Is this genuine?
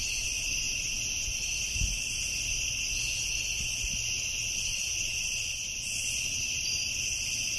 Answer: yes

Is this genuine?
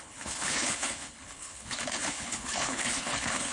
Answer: no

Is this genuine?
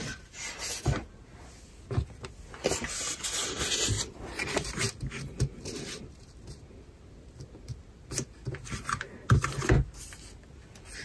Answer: yes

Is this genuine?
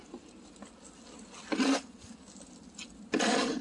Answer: yes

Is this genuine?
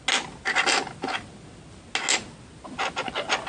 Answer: yes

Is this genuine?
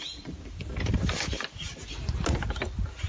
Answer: yes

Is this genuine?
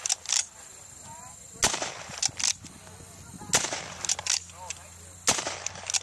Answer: yes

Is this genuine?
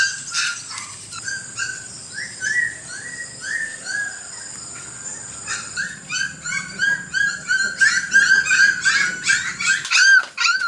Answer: yes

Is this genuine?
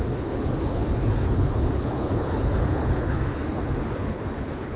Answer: no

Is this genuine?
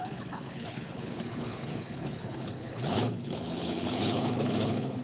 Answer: no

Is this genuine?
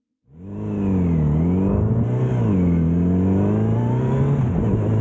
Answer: yes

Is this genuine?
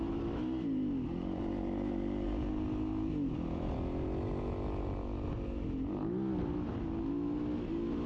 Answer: yes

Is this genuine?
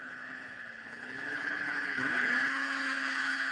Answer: no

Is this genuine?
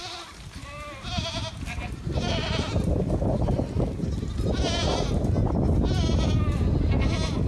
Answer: yes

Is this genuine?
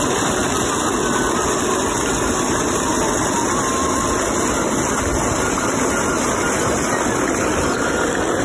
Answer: yes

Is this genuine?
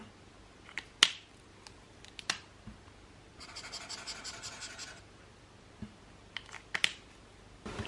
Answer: yes